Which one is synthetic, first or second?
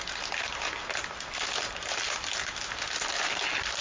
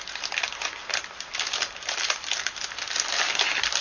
second